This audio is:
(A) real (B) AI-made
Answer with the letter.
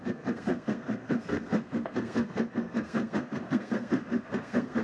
B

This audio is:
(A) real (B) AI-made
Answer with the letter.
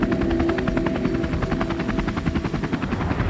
A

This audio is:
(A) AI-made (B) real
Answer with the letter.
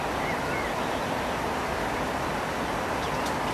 B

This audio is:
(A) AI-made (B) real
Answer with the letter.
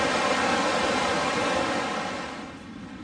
B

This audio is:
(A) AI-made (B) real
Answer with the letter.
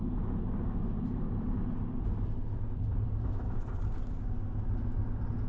B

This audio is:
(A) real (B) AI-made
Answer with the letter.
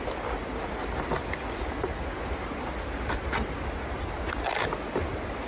A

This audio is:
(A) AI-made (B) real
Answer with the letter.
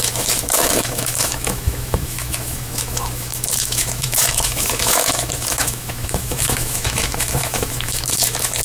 A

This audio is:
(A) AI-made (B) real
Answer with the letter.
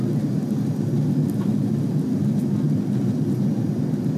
B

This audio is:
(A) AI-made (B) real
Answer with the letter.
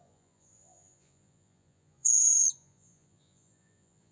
A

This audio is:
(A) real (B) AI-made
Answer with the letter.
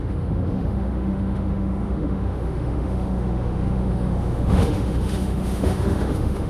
B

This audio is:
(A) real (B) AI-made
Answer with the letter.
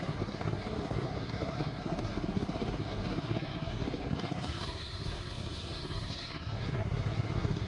B